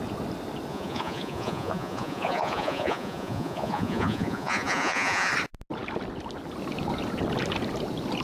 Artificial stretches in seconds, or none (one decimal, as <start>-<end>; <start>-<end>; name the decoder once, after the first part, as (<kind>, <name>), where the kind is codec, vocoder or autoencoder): 0.7-5.3 (vocoder, Vocos)